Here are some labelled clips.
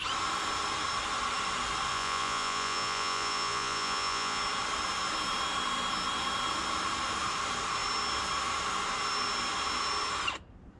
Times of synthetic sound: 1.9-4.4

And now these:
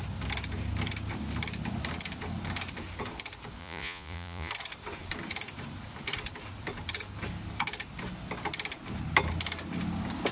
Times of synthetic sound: 3.6-4.5

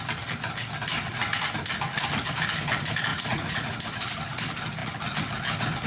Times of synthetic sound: 3.1-3.9

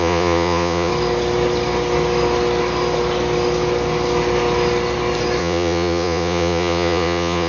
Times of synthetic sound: 0.0-0.9; 5.4-7.5

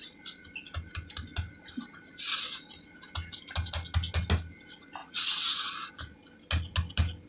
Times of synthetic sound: 5.0-5.9